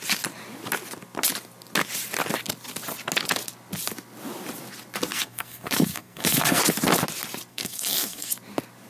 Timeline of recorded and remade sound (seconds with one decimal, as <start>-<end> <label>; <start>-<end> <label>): 0.0-5.1 recorded; 5.1-6.6 remade; 6.6-7.5 recorded; 7.5-8.3 remade; 8.3-8.9 recorded